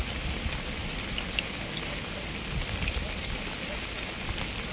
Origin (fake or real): real